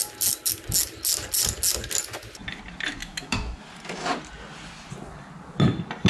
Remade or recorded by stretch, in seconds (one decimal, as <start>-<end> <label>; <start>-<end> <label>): 0.0-3.0 recorded; 3.0-3.6 remade; 3.6-6.1 recorded